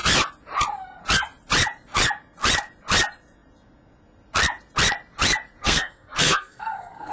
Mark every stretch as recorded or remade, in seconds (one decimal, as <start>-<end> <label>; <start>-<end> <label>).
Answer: 0.0-5.6 recorded; 5.6-7.1 remade